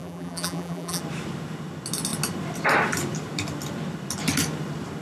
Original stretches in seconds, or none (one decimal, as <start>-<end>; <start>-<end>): 1.0-5.0